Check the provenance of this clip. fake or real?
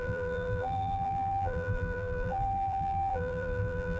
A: fake